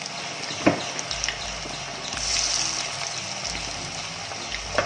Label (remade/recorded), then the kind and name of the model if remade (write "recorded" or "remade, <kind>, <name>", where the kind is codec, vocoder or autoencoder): recorded